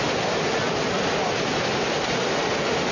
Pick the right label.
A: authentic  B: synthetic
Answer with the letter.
A